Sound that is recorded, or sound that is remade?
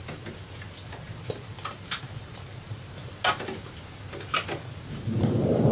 recorded